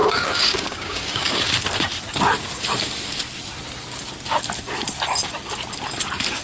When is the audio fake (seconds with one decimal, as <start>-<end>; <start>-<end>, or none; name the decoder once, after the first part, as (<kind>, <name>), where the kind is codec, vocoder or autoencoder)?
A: 0.0-1.4 (codec, DAC)